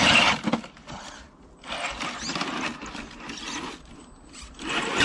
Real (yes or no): yes